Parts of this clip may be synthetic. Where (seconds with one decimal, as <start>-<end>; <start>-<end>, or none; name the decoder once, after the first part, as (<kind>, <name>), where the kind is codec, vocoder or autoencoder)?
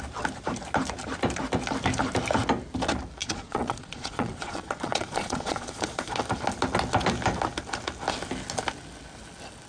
3.2-6.2 (vocoder, Vocos)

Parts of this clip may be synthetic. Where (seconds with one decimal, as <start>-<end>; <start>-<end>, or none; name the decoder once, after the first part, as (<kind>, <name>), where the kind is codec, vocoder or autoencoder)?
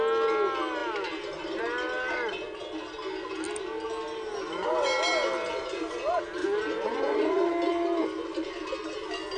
6.4-7.5 (vocoder, Vocos)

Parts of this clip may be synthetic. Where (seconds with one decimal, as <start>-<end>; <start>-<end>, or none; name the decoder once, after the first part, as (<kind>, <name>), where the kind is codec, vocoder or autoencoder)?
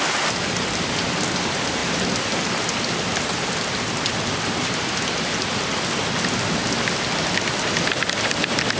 none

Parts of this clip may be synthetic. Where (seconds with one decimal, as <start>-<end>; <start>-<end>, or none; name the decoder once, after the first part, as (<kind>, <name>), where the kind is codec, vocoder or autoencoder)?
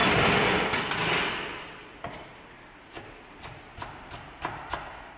none